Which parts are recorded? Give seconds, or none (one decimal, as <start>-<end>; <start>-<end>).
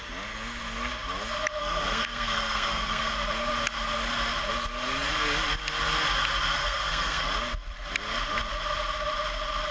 0.0-1.6; 3.1-6.6; 7.2-9.7